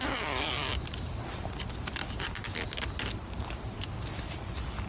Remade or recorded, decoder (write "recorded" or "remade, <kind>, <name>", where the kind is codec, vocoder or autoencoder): recorded